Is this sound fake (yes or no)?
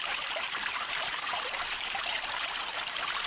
yes